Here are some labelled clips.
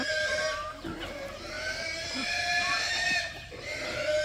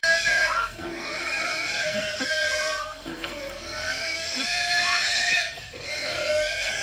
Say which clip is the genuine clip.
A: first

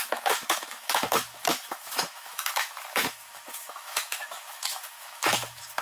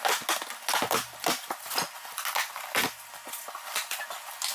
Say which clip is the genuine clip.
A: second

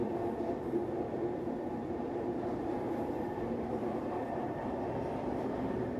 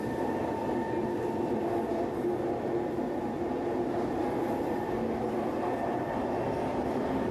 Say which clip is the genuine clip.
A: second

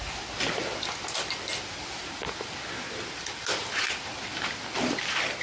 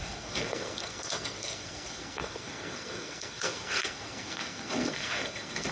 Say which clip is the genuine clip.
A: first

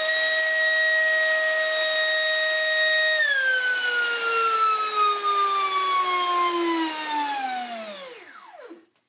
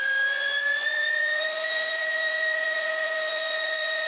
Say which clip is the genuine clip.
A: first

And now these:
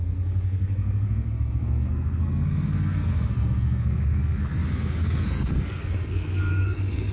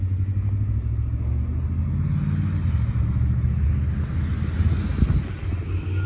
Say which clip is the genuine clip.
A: second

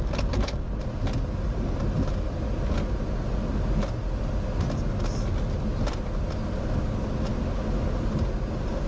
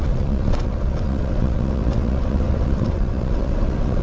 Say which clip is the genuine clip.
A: first